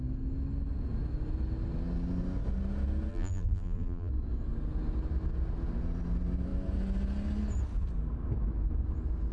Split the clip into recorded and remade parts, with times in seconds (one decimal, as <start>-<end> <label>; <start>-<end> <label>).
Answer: 0.0-3.1 recorded; 3.1-4.1 remade; 4.1-9.3 recorded